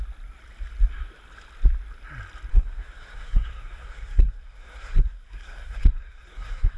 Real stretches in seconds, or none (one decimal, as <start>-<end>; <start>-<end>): 0.0-2.5